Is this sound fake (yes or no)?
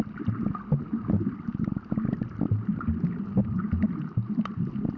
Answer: no